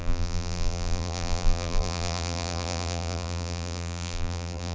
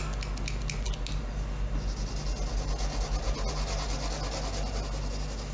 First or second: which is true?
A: second